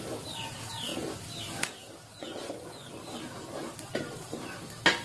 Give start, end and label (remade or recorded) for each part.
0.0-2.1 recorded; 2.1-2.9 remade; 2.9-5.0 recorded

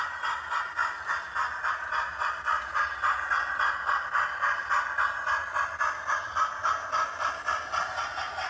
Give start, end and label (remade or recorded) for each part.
0.0-8.5 recorded

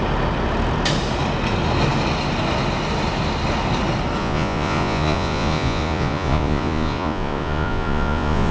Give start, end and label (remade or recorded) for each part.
0.0-4.2 recorded; 4.2-8.5 remade

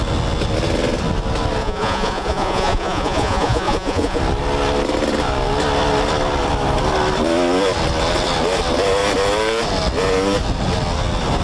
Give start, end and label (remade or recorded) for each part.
0.0-1.6 recorded; 1.6-4.2 remade; 4.2-11.4 recorded